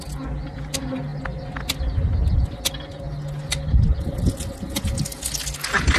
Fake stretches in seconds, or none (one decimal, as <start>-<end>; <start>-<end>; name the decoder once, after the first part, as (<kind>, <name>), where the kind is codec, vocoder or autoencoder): none